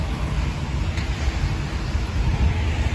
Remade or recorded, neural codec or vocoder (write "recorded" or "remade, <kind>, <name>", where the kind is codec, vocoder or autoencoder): recorded